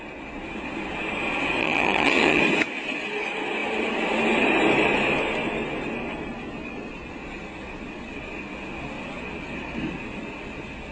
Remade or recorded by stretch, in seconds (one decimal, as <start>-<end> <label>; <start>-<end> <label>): 0.0-1.6 recorded; 1.6-2.4 remade; 2.4-10.9 recorded